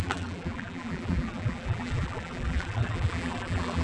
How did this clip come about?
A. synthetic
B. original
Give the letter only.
A